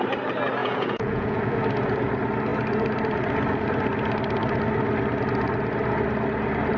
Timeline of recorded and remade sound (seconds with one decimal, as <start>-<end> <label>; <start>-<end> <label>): 0.0-0.6 recorded; 0.6-1.4 remade; 1.4-6.8 recorded